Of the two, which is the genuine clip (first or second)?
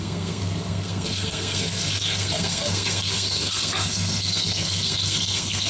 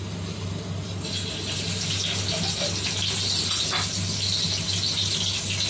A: second